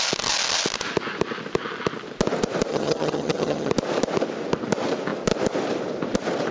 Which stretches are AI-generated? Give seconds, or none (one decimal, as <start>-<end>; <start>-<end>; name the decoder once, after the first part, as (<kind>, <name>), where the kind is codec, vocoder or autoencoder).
2.7-3.7 (vocoder, HiFi-GAN)